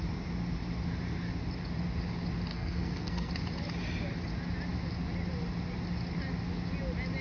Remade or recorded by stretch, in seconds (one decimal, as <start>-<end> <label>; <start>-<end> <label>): 0.0-2.5 recorded; 2.5-3.3 remade; 3.3-7.2 recorded